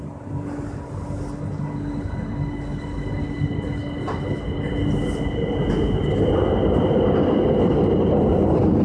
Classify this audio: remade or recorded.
recorded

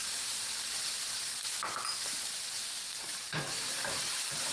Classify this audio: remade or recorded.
remade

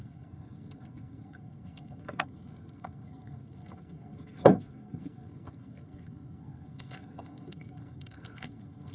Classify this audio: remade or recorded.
remade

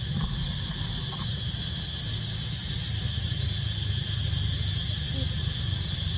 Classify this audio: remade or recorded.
recorded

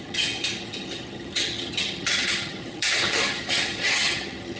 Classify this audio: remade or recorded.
remade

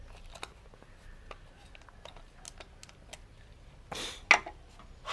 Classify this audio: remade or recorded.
recorded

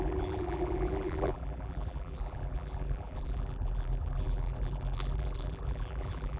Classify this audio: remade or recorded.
remade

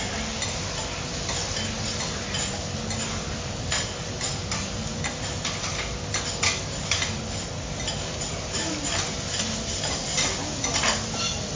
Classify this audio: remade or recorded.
recorded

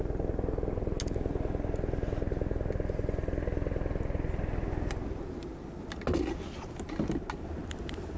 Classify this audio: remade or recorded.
recorded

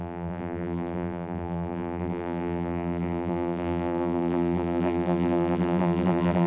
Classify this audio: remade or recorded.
remade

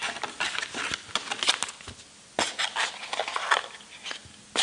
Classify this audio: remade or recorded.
recorded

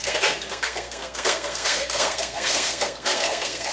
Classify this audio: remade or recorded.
remade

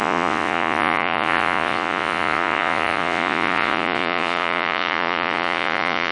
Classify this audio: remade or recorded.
remade